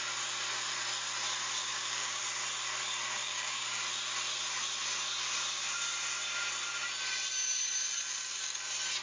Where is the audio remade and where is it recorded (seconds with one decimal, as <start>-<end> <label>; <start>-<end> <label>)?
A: 0.0-1.6 recorded; 1.6-2.2 remade; 2.2-3.2 recorded; 3.2-3.8 remade; 3.8-9.0 recorded